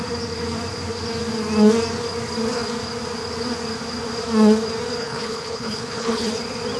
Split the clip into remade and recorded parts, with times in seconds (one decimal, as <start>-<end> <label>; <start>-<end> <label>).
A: 0.0-5.0 recorded; 5.0-6.3 remade; 6.3-6.8 recorded